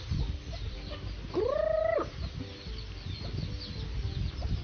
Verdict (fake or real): real